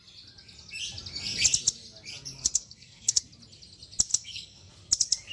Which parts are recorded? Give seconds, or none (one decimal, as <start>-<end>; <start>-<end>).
0.0-2.4; 3.2-4.1; 4.7-5.3